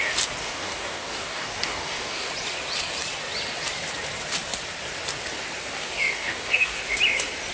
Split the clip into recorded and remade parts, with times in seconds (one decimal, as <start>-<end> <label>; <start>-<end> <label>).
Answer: 0.0-0.4 recorded; 0.4-2.3 remade; 2.3-5.8 recorded; 5.8-6.8 remade; 6.8-7.5 recorded